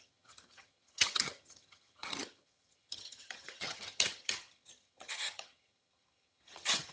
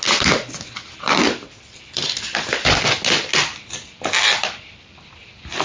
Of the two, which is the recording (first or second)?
second